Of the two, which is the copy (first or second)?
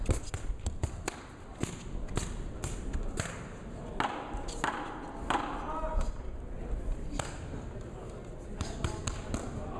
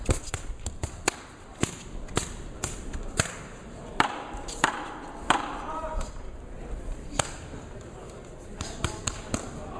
second